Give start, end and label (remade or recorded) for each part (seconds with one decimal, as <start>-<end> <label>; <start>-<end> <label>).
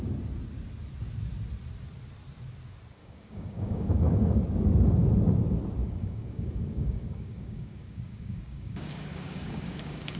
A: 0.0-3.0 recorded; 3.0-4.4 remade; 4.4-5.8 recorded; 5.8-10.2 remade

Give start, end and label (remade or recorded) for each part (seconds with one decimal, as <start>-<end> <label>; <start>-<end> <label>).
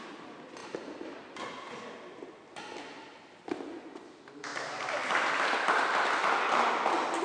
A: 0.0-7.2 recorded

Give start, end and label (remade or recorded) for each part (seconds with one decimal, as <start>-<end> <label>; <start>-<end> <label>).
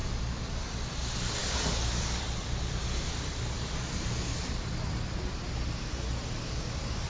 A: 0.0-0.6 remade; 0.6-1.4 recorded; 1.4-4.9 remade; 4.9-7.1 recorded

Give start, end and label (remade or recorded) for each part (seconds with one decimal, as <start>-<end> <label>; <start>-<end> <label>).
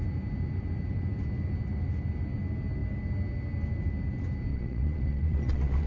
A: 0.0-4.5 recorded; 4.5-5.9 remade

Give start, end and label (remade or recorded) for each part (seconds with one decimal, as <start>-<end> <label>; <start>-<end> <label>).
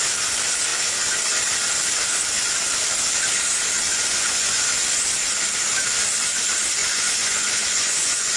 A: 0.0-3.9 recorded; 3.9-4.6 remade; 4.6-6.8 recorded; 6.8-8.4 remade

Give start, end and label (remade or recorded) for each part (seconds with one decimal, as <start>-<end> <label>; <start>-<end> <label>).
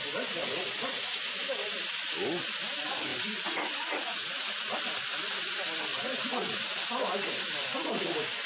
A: 0.0-0.4 recorded; 0.4-1.3 remade; 1.3-3.1 recorded; 3.1-4.8 remade; 4.8-5.9 recorded; 5.9-6.6 remade; 6.6-8.5 recorded